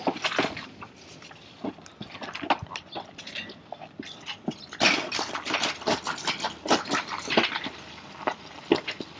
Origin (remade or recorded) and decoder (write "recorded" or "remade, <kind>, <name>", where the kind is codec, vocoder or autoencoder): recorded